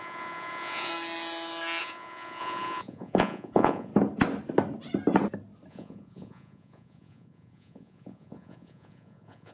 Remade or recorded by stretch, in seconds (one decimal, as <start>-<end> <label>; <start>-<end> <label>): 0.0-0.9 remade; 0.9-1.8 recorded; 1.8-3.9 remade; 3.9-5.7 recorded; 5.7-9.5 remade